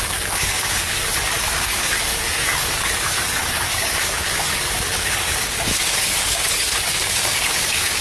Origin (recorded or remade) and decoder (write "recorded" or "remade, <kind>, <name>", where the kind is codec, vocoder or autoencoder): remade, codec, DAC